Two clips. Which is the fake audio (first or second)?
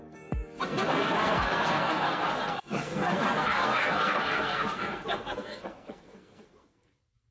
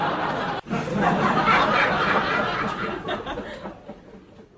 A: first